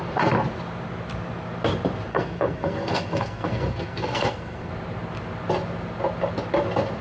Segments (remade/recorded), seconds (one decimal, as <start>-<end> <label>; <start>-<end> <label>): 0.0-2.1 recorded; 2.1-4.7 remade; 4.7-7.0 recorded